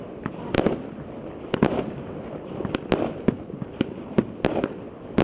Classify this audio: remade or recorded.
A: recorded